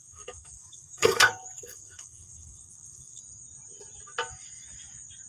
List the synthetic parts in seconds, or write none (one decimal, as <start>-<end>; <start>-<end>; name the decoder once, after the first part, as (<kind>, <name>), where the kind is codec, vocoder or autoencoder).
0.0-3.2 (codec, SNAC)